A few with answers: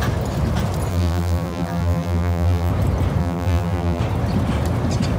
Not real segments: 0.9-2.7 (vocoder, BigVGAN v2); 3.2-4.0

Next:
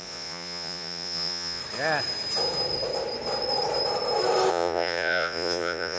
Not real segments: 0.0-1.6 (vocoder, Vocos); 4.5-6.0

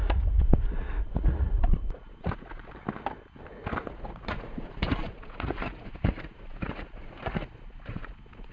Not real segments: 0.0-2.7 (vocoder, Vocos); 3.8-8.5

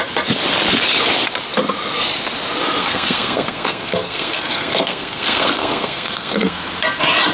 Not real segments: 2.8-6.7 (codec, SNAC)